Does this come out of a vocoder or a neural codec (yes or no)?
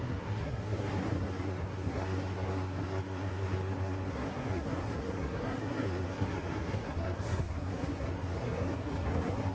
yes